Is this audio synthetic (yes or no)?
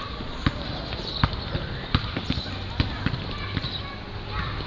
no